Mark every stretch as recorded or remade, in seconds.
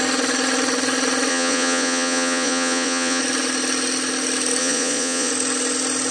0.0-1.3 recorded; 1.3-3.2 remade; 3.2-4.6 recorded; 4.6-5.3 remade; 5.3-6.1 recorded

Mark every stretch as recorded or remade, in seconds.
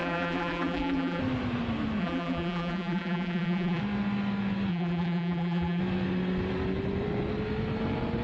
0.0-1.2 remade; 1.2-2.0 recorded; 2.0-3.8 remade; 3.8-4.7 recorded; 4.7-5.8 remade; 5.8-8.2 recorded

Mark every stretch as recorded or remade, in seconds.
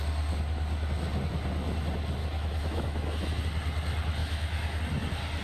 0.0-2.2 recorded; 2.2-3.4 remade; 3.4-4.2 recorded; 4.2-4.8 remade; 4.8-5.4 recorded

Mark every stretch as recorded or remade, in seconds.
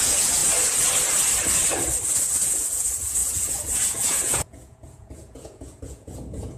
0.0-0.4 remade; 0.4-2.3 recorded; 2.3-6.6 remade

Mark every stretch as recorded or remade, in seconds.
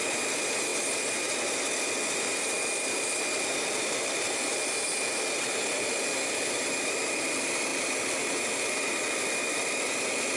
0.0-10.4 recorded